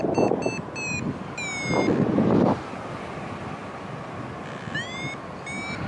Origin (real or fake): real